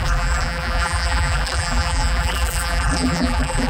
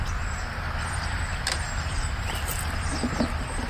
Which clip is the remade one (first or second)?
first